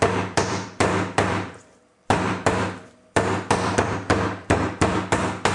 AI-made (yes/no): yes